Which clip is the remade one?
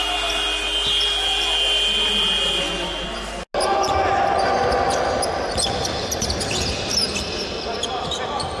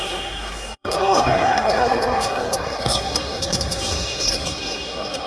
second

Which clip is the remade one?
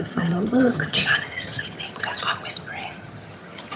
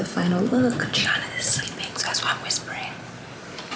first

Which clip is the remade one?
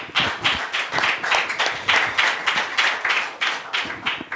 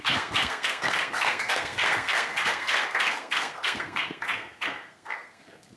second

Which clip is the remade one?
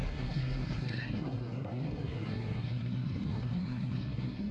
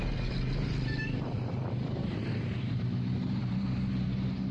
first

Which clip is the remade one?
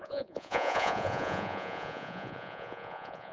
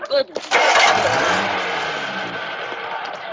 first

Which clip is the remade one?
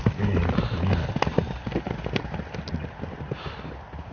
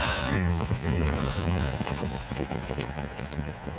second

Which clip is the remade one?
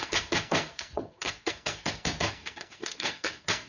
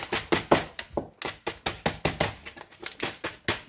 first